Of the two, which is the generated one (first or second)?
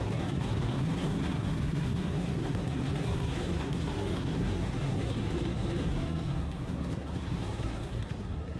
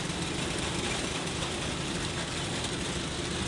first